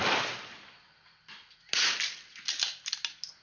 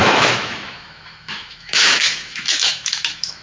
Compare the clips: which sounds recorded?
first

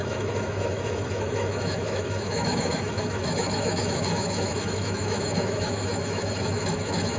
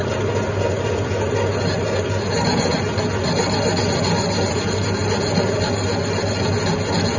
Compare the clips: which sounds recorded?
second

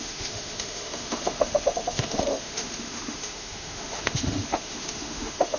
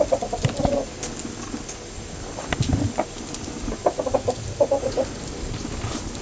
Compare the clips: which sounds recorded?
second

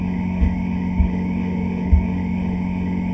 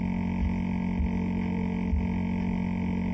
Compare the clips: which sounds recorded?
second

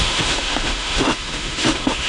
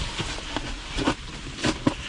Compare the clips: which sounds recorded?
second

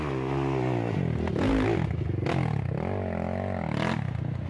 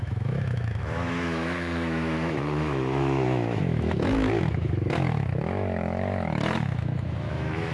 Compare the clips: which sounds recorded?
first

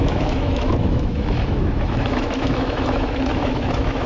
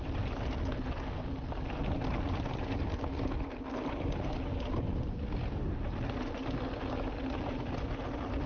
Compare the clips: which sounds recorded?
second